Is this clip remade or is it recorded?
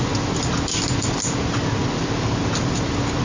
recorded